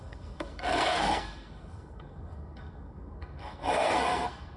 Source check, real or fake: fake